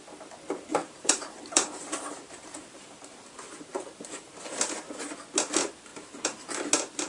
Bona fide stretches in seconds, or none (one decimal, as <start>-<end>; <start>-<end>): 0.0-0.7; 5.0-5.9; 6.5-7.1